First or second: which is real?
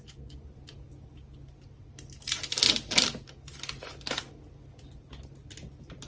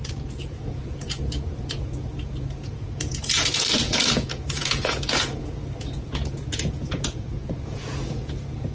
first